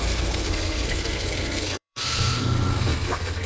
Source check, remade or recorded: remade